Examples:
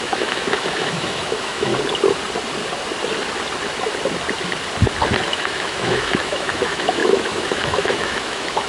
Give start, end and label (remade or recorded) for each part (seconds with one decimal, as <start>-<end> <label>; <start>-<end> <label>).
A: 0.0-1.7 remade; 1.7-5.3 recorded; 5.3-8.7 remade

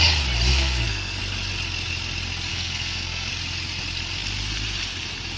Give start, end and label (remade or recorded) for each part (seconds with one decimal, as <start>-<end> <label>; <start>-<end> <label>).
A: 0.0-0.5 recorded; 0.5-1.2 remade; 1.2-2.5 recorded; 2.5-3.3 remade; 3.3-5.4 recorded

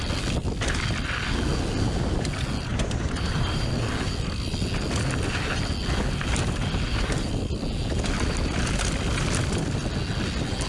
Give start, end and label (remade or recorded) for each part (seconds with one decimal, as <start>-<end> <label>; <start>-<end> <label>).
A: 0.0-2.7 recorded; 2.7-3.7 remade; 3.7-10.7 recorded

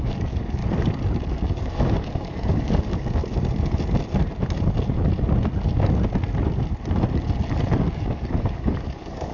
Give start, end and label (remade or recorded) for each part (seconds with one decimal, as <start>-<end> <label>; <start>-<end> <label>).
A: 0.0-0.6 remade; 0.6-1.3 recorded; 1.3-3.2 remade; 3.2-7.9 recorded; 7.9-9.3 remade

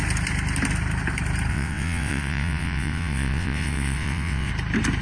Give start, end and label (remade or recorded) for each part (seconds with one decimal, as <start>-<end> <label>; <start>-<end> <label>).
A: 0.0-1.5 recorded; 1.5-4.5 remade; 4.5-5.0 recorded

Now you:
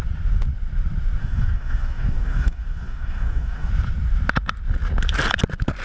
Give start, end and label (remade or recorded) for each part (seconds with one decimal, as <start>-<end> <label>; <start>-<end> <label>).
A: 0.0-1.2 recorded; 1.2-3.7 remade; 3.7-5.8 recorded